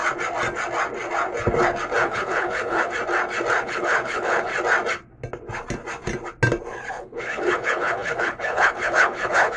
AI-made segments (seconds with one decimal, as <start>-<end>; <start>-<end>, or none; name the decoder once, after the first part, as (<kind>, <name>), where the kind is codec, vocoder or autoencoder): 2.0-2.9 (codec, HILCodec); 3.6-4.5; 6.9-9.6